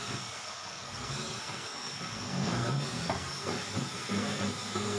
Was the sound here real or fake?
fake